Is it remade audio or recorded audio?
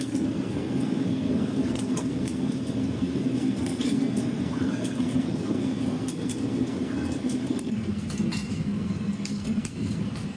remade